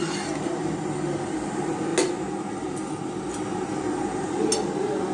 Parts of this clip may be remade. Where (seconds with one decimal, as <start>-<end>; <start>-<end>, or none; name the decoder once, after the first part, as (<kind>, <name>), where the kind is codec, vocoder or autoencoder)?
none